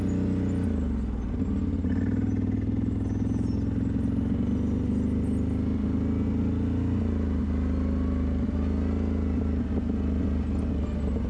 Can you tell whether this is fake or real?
real